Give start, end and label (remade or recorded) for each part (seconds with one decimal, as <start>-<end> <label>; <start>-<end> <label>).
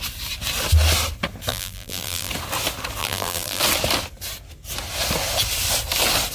0.0-1.5 recorded; 1.5-2.3 remade; 2.3-3.0 recorded; 3.0-3.6 remade; 3.6-6.3 recorded